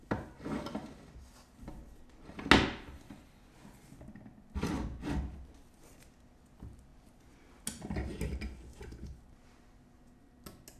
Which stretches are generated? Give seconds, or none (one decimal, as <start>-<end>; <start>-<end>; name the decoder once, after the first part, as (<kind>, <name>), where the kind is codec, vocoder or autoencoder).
none